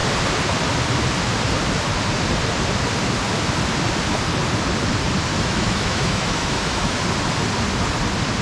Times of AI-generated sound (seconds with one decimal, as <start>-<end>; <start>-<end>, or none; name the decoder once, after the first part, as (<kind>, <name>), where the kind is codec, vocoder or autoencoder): 5.3-7.0 (autoencoder, DAC-VAE)